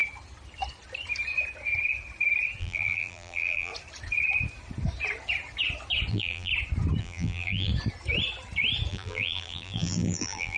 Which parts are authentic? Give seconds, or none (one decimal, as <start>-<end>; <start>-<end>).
0.0-2.6; 3.7-6.1; 6.5-7.0; 7.7-8.9